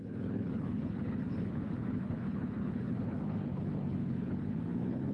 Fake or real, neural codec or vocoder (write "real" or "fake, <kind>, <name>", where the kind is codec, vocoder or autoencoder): fake, codec, HILCodec